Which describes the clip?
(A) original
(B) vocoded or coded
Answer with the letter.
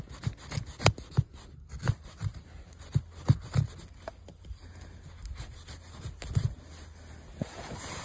A